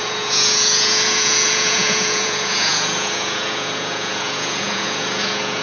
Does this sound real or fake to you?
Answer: fake